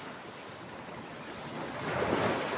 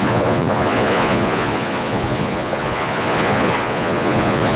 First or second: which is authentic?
first